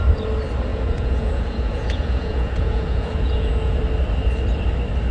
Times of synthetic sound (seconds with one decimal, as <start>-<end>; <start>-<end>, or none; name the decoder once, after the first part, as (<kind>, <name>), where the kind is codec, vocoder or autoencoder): 0.7-3.8 (vocoder, Vocos)